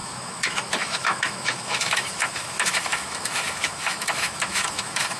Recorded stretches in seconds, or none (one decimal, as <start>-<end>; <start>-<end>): none